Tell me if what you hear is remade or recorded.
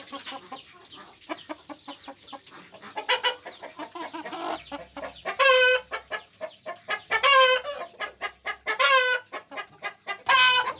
recorded